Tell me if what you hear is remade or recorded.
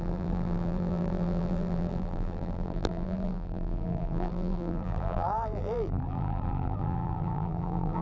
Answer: remade